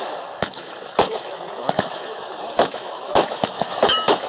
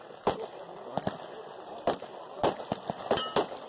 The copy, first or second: first